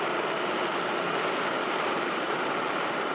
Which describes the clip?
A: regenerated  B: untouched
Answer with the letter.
B